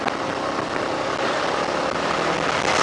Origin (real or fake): real